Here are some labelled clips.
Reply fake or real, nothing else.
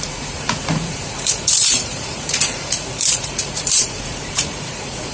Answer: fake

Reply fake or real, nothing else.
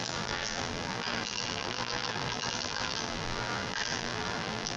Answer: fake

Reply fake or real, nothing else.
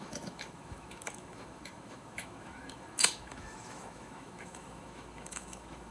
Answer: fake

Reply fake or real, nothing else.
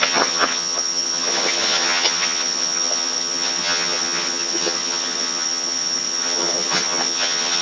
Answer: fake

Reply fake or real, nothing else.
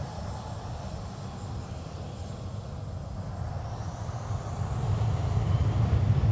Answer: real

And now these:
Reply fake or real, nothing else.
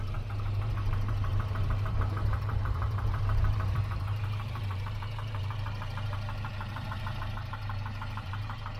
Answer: fake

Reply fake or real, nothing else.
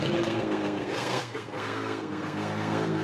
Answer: fake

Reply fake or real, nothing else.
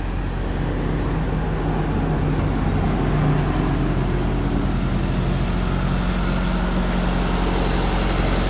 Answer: real